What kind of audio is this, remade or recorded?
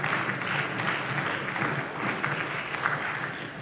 recorded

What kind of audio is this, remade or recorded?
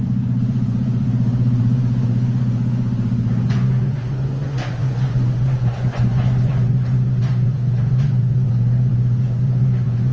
remade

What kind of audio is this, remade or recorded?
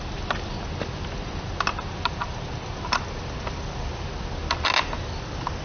recorded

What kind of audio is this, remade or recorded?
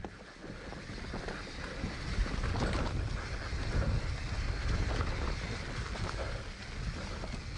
recorded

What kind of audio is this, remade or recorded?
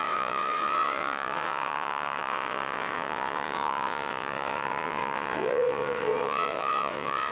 remade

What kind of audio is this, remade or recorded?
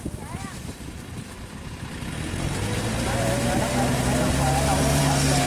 recorded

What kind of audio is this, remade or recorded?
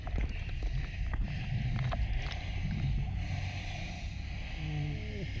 recorded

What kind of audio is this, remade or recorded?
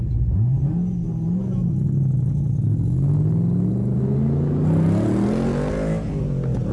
recorded